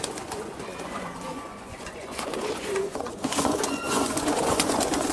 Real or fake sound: fake